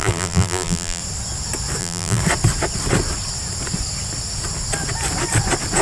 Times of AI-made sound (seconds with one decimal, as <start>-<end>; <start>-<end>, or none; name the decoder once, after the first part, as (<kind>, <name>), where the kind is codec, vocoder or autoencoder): 0.0-1.0 (vocoder, BigVGAN v2); 1.8-2.2